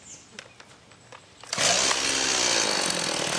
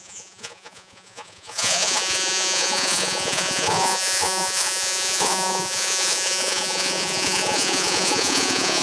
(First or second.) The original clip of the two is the first